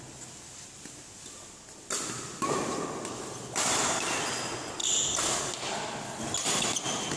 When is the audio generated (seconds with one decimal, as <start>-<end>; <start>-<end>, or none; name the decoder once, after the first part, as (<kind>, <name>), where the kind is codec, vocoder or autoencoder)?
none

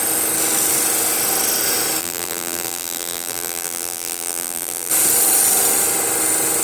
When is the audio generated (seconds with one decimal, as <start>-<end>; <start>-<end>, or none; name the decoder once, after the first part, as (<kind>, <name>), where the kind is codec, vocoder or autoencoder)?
2.0-4.9 (vocoder, BigVGAN v2)

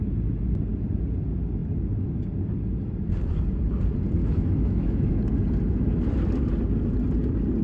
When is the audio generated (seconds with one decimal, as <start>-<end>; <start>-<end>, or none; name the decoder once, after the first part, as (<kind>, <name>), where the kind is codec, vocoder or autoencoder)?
4.2-5.2 (autoencoder, DAC-VAE)

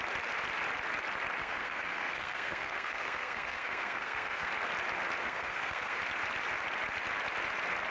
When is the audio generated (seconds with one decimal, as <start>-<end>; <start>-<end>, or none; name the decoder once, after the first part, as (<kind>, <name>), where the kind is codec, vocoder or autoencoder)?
1.4-4.5 (codec, SNAC); 5.2-6.0

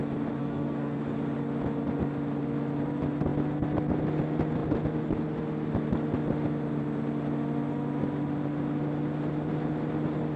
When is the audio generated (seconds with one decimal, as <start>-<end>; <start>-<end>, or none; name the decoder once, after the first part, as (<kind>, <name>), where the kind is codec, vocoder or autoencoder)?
0.4-1.0 (codec, SNAC)